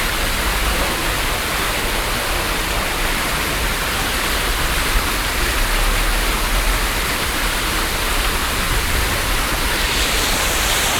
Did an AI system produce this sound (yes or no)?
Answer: no